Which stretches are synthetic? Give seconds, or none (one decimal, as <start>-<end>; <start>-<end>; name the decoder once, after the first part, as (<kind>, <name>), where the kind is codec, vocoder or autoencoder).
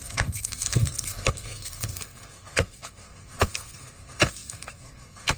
0.0-5.4 (codec, SNAC)